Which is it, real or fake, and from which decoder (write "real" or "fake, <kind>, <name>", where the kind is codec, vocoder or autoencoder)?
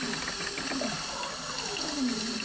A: real